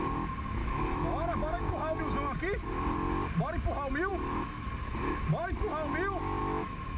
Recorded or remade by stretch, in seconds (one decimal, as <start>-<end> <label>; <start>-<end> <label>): 0.0-0.6 recorded; 0.6-2.0 remade; 2.0-4.1 recorded; 4.1-4.7 remade; 4.7-6.4 recorded; 6.4-7.0 remade